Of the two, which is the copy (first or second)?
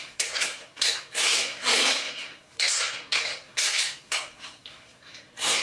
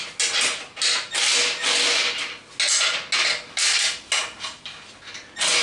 first